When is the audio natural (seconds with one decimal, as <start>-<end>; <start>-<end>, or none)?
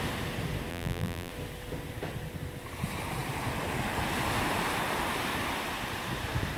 0.0-0.7; 1.3-6.6